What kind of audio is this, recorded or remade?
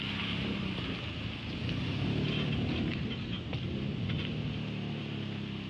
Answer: recorded